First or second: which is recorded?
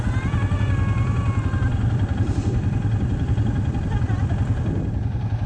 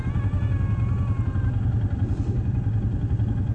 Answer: second